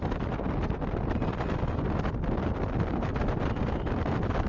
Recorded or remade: recorded